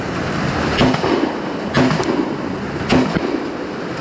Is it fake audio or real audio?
real